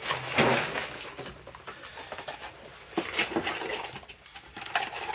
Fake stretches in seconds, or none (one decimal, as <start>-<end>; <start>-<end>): none